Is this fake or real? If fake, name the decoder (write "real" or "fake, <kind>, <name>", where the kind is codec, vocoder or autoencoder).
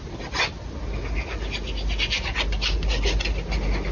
real